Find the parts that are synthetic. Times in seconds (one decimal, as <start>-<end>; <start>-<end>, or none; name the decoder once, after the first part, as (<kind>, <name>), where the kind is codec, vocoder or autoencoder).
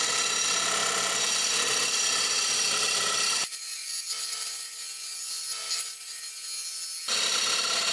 0.8-5.5 (vocoder, BigVGAN v2)